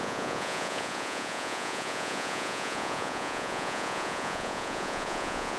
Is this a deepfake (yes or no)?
yes